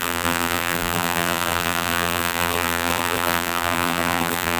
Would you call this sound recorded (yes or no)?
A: no